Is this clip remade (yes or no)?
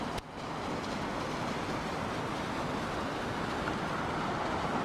no